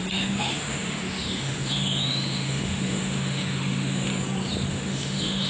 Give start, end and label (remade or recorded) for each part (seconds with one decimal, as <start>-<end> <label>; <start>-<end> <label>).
0.0-4.1 remade; 4.1-4.7 recorded; 4.7-5.5 remade